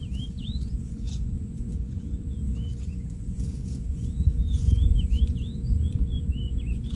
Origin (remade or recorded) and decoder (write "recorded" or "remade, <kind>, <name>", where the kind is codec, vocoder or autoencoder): remade, vocoder, Vocos